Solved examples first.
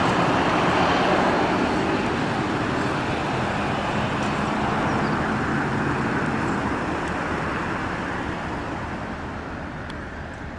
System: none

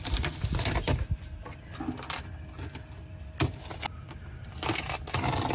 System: none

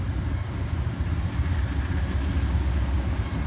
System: none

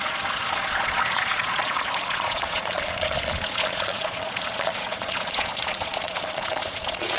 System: vocoder, Vocos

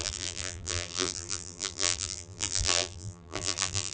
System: vocoder, BigVGAN v2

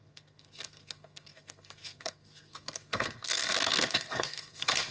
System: codec, SNAC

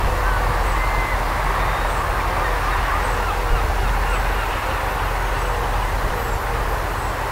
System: none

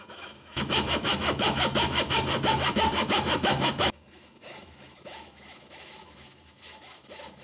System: autoencoder, DAC-VAE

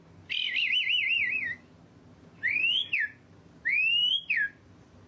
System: none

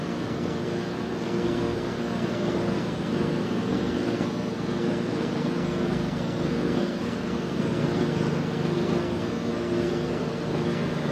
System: codec, SNAC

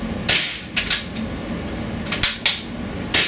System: none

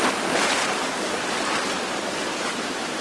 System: none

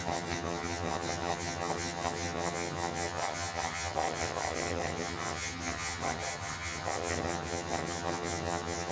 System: vocoder, HiFi-GAN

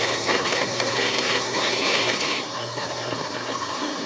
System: codec, SNAC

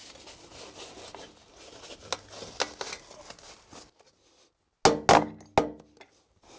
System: none